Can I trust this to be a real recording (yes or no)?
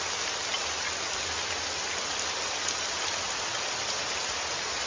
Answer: yes